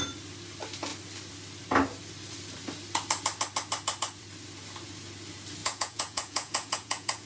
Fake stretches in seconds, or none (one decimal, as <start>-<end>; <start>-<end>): 5.6-7.3